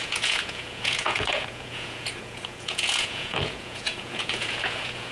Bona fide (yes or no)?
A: no